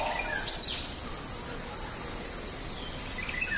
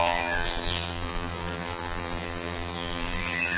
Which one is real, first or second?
first